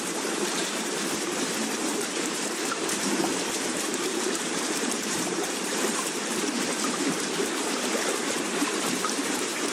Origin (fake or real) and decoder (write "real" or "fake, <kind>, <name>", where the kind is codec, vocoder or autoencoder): fake, vocoder, BigVGAN v2